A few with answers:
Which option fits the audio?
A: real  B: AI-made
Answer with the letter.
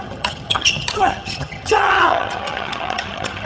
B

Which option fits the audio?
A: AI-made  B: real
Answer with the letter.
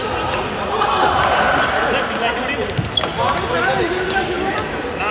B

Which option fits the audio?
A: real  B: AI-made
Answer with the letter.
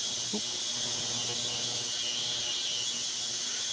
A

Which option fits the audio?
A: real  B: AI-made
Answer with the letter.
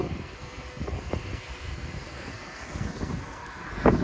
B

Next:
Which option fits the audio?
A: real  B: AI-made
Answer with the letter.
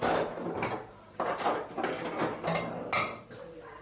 A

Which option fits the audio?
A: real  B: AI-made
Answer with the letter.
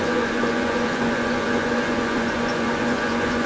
B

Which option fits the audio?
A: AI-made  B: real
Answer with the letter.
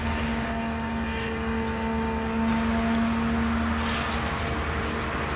B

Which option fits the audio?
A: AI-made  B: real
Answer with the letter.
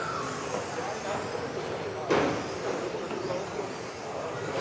B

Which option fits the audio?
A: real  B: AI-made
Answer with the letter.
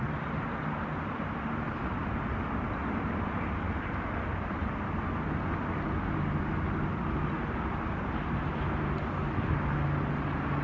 A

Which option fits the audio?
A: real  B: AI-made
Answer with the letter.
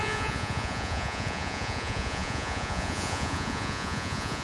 B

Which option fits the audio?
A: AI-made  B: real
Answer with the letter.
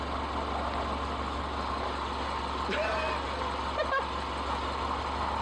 B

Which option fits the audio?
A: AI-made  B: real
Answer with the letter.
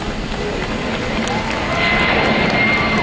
B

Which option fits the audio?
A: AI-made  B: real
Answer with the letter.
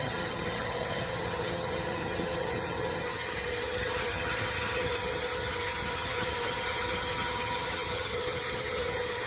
A